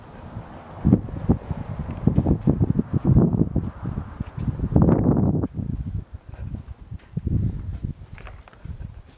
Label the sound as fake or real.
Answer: real